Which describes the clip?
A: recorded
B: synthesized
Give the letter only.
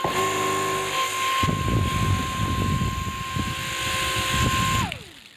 A